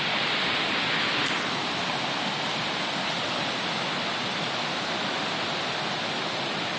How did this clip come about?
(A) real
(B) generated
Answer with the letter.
A